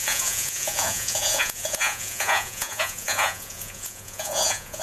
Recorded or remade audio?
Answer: remade